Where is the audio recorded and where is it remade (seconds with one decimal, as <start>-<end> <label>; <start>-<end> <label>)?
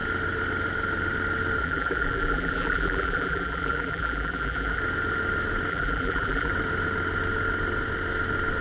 0.0-1.6 recorded; 1.6-4.8 remade; 4.8-5.7 recorded; 5.7-6.5 remade; 6.5-8.6 recorded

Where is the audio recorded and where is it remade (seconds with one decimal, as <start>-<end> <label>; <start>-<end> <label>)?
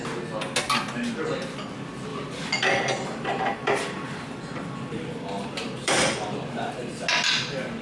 0.0-2.1 recorded; 2.1-6.7 remade; 6.7-7.8 recorded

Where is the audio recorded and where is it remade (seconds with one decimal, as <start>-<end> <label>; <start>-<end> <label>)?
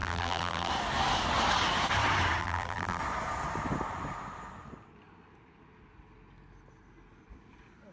0.0-0.7 remade; 0.7-2.4 recorded; 2.4-3.0 remade; 3.0-7.9 recorded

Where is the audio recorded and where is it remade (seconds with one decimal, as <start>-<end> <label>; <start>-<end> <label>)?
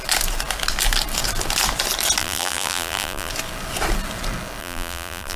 0.0-2.2 recorded; 2.2-3.3 remade; 3.3-4.6 recorded; 4.6-5.4 remade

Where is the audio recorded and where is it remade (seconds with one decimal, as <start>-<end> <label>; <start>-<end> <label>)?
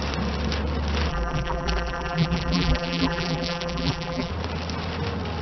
0.0-1.1 recorded; 1.1-4.3 remade; 4.3-5.4 recorded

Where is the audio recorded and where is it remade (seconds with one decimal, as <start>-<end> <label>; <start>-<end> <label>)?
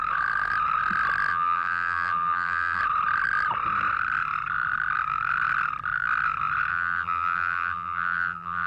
0.0-1.3 recorded; 1.3-2.8 remade; 2.8-6.7 recorded; 6.7-8.7 remade